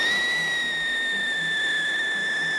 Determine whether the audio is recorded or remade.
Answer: recorded